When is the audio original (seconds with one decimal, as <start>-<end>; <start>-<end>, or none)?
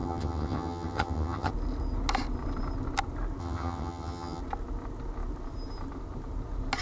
1.5-3.4; 4.4-6.8